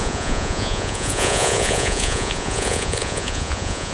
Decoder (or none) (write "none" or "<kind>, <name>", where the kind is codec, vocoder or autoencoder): vocoder, Vocos